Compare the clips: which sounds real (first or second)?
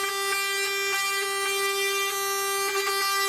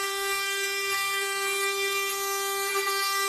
first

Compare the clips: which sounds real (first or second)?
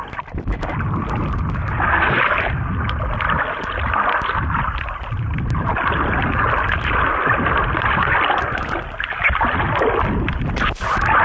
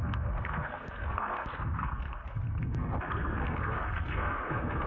first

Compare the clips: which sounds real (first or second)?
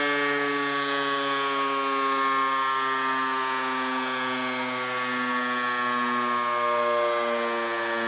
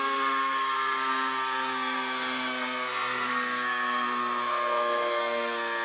first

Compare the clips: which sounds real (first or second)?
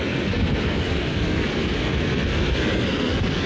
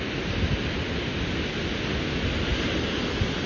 second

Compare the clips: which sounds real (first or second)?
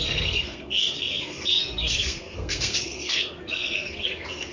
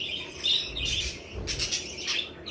second